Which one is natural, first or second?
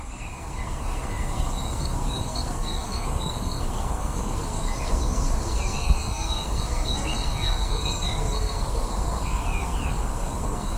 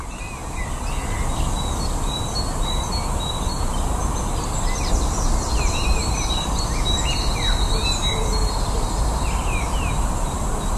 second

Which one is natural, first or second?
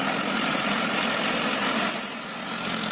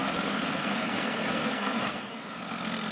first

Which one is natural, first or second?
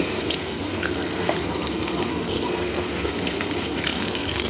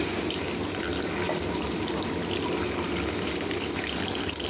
second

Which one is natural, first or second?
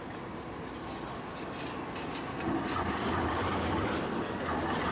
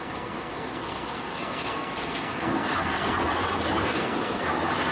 first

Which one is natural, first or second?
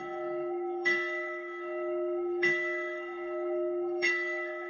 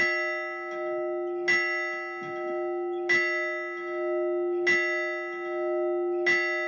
second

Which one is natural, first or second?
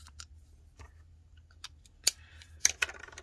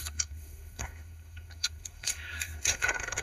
first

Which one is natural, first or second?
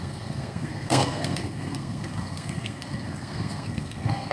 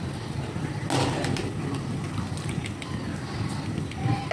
second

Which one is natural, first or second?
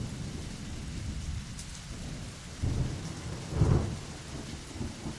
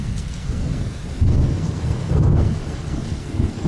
first